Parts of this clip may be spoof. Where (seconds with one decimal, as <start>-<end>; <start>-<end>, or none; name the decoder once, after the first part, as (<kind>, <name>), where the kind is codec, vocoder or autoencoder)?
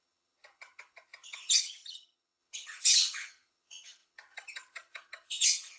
0.0-5.8 (vocoder, HiFi-GAN)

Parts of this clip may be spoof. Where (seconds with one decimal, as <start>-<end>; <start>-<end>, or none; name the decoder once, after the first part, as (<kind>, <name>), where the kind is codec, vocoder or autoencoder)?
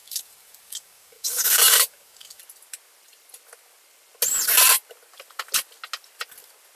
0.0-2.4 (codec, DAC)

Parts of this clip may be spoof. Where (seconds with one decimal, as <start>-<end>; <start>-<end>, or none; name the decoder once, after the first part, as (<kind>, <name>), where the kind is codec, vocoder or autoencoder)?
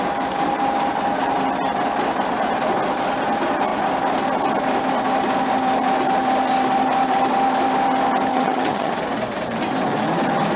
8.3-8.9 (vocoder, HiFi-GAN)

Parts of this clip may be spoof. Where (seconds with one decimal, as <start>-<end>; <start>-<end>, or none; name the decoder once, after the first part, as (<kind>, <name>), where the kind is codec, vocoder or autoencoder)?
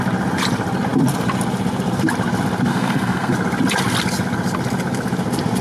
2.7-3.3 (codec, SNAC)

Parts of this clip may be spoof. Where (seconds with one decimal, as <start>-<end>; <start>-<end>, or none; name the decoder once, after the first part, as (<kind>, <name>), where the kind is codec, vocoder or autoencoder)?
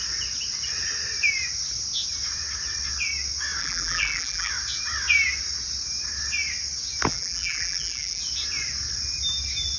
3.6-4.5 (vocoder, BigVGAN v2); 7.1-8.2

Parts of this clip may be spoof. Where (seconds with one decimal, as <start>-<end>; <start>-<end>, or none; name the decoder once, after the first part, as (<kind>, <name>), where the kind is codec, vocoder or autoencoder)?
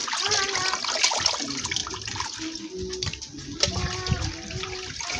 none